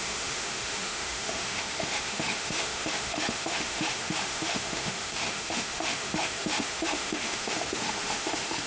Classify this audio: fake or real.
fake